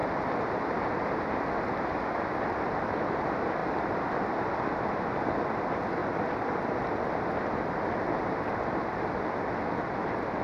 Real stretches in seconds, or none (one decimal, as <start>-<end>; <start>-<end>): 0.9-10.4